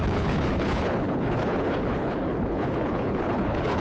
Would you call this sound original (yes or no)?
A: no